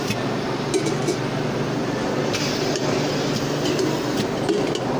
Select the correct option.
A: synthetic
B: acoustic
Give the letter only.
B